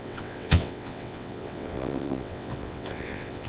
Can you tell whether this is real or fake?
fake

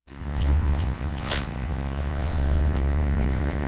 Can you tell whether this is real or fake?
fake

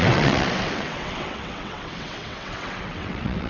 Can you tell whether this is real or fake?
fake